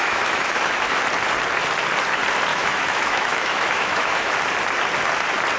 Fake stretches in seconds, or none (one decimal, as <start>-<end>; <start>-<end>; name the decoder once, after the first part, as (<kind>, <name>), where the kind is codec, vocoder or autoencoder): 0.0-1.0 (autoencoder, DAC-VAE); 2.5-4.4